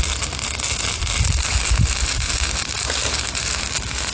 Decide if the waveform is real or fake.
real